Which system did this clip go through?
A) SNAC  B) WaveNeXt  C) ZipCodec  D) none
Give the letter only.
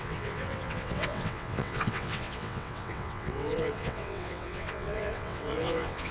B